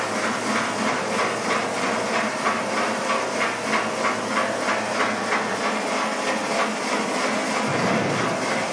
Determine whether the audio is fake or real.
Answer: real